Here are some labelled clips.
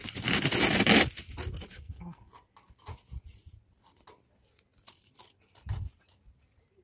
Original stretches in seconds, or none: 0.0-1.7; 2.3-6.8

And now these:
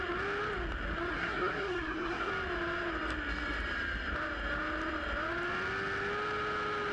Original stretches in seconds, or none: 0.0-1.1; 2.3-6.9

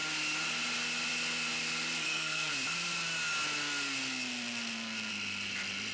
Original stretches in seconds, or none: 0.0-2.0; 2.5-5.9